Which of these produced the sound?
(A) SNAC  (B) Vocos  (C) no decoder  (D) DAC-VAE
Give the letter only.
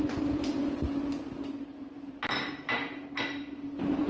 C